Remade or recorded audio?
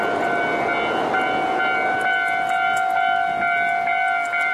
recorded